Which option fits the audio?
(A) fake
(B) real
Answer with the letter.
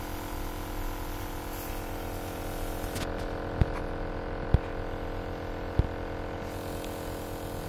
B